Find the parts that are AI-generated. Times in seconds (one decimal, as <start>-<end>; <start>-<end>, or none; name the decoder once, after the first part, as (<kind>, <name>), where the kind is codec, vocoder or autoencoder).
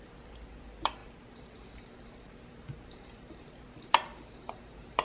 0.0-5.0 (vocoder, BigVGAN v2)